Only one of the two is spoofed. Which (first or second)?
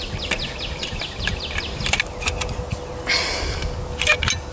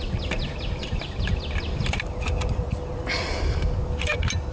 second